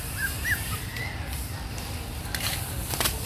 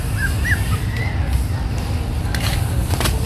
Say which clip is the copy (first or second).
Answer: first